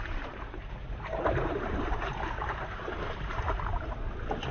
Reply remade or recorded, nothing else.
remade